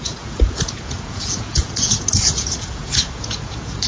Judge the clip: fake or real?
fake